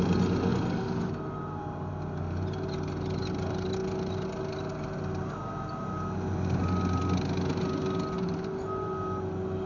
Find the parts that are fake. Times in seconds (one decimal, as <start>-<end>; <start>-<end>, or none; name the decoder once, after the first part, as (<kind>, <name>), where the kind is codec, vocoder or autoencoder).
none

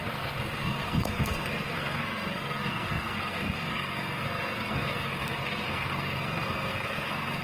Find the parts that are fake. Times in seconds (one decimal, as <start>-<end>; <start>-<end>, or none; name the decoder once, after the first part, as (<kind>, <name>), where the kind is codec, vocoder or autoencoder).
0.0-7.4 (codec, SNAC)

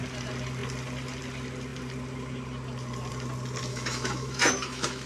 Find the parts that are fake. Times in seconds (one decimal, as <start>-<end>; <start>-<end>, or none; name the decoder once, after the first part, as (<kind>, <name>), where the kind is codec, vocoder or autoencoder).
3.7-5.1 (autoencoder, DAC-VAE)

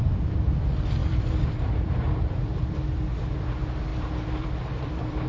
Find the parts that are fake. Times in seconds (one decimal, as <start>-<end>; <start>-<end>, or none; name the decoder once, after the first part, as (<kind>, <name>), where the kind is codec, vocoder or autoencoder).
0.0-5.3 (vocoder, BigVGAN v2)

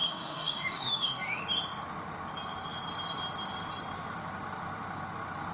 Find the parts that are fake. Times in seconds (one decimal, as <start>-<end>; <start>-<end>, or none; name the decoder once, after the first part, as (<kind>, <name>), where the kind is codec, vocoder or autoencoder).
0.0-1.4 (autoencoder, DAC-VAE)

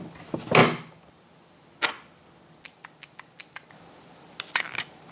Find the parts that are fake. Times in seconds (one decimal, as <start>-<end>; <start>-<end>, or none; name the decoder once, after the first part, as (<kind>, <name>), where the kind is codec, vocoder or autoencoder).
none

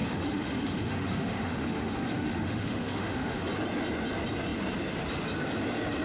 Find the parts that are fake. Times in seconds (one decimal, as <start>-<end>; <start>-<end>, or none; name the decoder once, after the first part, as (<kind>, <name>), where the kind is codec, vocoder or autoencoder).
0.0-3.5 (autoencoder, DAC-VAE)